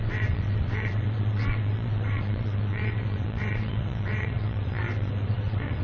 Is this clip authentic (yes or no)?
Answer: no